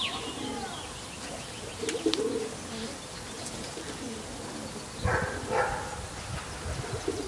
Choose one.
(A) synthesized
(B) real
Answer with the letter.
B